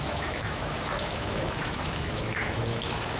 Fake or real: fake